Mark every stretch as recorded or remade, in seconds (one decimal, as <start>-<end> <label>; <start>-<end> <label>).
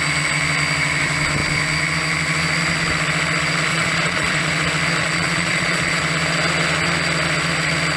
0.0-3.7 recorded; 3.7-4.4 remade; 4.4-5.0 recorded; 5.0-6.0 remade; 6.0-8.0 recorded